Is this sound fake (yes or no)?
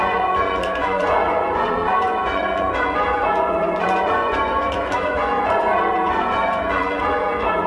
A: yes